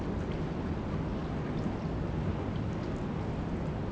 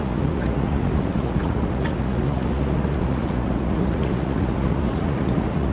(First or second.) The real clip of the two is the first